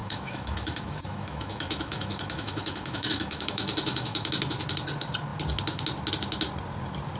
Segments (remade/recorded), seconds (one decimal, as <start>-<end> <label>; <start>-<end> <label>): 0.0-4.3 remade; 4.3-7.2 recorded